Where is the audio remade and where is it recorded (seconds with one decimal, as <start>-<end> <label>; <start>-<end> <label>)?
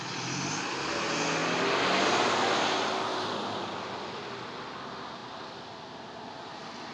0.0-6.9 recorded